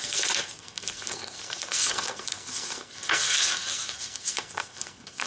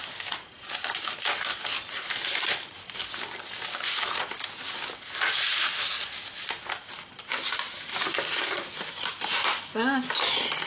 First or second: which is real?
second